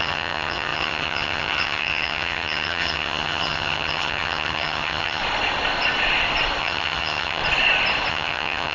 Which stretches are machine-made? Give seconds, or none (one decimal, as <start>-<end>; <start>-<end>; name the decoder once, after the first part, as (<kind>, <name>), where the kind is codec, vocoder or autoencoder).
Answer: 0.0-5.2 (vocoder, HiFi-GAN); 6.6-7.4; 8.1-8.7